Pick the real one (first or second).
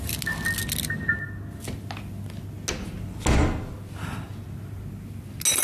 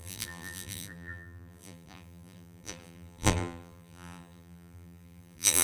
first